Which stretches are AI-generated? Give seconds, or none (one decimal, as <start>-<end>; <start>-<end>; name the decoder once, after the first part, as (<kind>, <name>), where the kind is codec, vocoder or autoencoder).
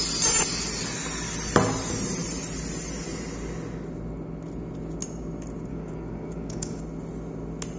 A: 5.7-6.8 (codec, DAC)